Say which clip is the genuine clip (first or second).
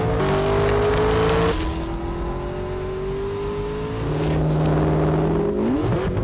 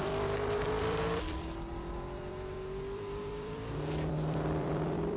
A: first